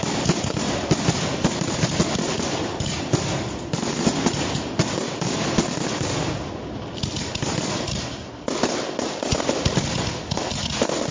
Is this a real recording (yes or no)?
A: yes